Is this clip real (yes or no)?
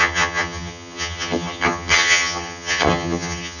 no